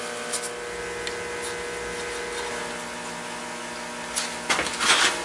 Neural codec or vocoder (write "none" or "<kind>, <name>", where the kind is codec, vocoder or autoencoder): none